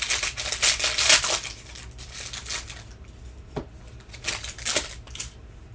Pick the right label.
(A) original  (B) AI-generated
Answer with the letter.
A